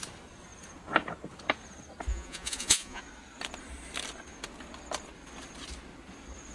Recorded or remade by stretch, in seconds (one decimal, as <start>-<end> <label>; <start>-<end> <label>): 0.0-2.1 recorded; 2.1-3.0 remade; 3.0-6.5 recorded